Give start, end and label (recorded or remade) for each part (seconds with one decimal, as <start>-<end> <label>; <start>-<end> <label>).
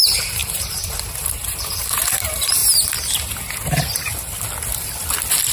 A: 0.0-2.6 remade; 2.6-5.5 recorded